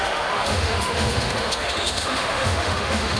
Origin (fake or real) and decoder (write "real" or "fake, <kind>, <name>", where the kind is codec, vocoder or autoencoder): fake, autoencoder, DAC-VAE